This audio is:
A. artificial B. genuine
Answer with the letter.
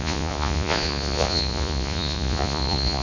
A